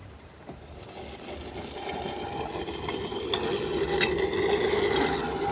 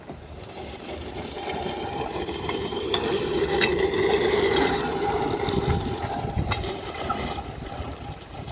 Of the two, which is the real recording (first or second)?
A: first